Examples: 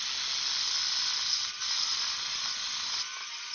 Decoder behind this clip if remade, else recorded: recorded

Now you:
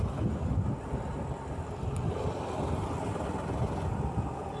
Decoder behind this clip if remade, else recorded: recorded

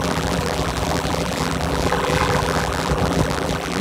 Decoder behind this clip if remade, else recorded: remade, vocoder, BigVGAN v2